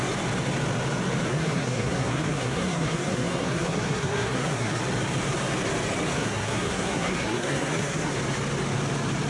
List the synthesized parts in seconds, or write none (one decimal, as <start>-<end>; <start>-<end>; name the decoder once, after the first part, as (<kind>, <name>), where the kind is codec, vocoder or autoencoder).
1.3-4.8 (codec, SNAC); 6.1-8.1